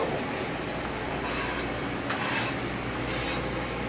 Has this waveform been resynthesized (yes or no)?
no